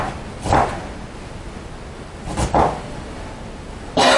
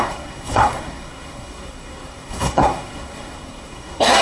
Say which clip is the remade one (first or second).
second